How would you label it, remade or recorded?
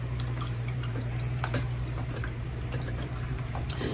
remade